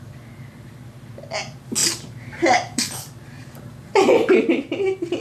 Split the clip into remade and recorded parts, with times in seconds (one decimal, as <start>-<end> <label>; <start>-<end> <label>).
0.0-1.8 recorded; 1.8-2.8 remade; 2.8-3.4 recorded; 3.4-5.2 remade